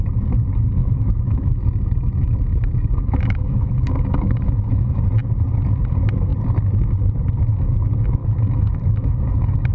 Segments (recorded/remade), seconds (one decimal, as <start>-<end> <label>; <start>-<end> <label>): 0.0-0.8 recorded; 0.8-5.0 remade; 5.0-8.2 recorded; 8.2-9.7 remade